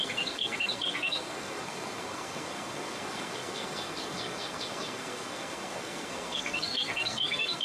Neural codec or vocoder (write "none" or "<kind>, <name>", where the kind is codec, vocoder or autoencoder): codec, SNAC